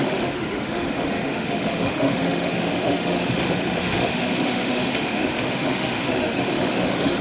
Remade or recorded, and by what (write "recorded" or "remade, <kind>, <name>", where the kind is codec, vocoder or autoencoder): remade, autoencoder, DAC-VAE